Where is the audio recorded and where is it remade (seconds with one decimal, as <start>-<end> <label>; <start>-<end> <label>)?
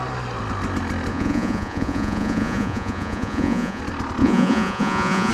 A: 0.0-1.1 recorded; 1.1-3.8 remade; 3.8-4.2 recorded; 4.2-5.3 remade